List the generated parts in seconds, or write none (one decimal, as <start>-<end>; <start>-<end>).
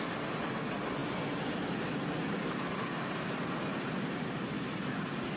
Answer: none